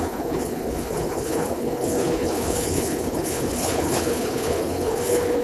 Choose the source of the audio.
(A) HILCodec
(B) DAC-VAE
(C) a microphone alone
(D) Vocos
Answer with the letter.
A